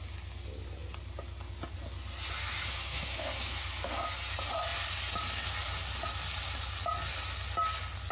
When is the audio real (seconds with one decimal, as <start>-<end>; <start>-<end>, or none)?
0.0-2.4; 3.9-8.1

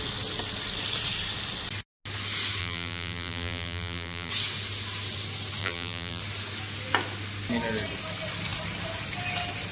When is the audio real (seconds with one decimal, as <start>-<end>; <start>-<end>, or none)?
0.0-2.6; 4.3-5.6; 6.2-9.7

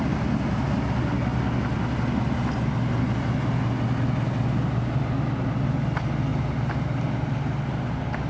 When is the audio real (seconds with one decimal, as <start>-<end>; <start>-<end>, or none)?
0.0-8.3

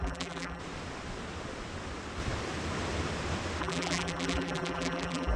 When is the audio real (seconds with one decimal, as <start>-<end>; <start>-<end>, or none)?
0.6-3.6

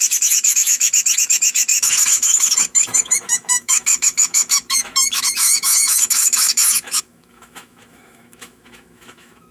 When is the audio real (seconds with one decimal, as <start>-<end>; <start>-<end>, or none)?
none

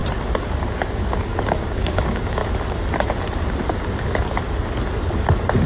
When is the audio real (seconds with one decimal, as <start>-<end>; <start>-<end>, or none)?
0.0-0.9; 2.4-5.7

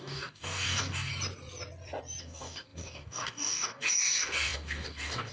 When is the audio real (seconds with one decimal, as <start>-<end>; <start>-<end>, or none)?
1.1-2.2

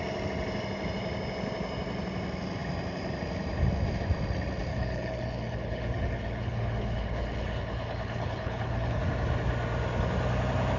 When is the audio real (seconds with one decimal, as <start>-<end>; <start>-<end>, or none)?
0.0-4.7; 9.0-10.8